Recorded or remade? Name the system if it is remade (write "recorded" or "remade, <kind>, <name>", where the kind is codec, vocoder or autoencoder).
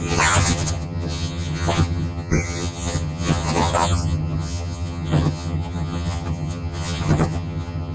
remade, vocoder, HiFi-GAN